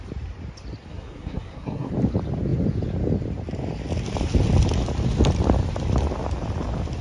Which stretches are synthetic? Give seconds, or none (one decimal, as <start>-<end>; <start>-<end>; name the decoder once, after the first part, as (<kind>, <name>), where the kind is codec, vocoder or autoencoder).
0.9-1.9 (codec, SNAC)

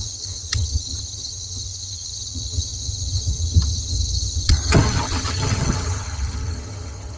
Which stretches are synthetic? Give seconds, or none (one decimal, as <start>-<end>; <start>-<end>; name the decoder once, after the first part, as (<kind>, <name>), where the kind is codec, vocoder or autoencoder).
0.0-7.2 (vocoder, HiFi-GAN)

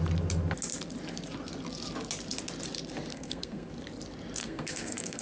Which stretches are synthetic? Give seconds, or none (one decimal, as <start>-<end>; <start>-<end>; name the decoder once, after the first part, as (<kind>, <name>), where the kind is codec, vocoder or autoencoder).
3.1-3.7 (codec, SNAC); 4.4-5.2

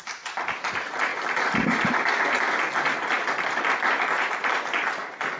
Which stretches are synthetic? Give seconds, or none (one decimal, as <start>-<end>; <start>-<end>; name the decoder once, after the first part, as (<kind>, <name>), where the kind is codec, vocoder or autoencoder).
none

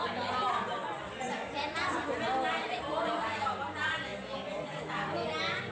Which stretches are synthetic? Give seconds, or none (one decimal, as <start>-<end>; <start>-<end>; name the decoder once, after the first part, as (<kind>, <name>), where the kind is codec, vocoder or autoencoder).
0.0-0.8 (vocoder, BigVGAN v2); 2.5-4.1